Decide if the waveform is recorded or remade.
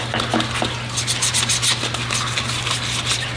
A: recorded